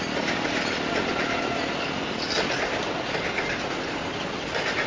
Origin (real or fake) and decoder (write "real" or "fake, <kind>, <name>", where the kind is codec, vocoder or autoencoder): real